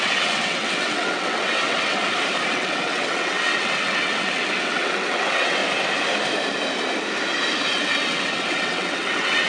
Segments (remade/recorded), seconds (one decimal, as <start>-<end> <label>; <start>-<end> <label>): 0.0-2.0 remade; 2.0-2.5 recorded; 2.5-5.6 remade; 5.6-7.7 recorded; 7.7-9.5 remade